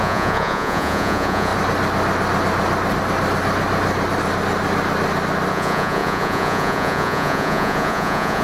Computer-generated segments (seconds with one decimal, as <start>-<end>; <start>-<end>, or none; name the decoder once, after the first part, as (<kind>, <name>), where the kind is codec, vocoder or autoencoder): 0.0-1.5 (vocoder, Vocos); 5.5-8.4